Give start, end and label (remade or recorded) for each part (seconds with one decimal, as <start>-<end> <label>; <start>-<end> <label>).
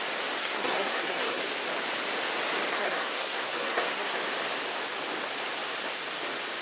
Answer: 0.0-0.4 recorded; 0.4-1.4 remade; 1.4-2.7 recorded; 2.7-4.2 remade; 4.2-6.6 recorded